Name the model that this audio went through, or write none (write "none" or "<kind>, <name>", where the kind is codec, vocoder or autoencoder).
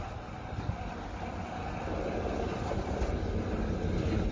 none